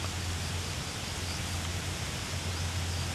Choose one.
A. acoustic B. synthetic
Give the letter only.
A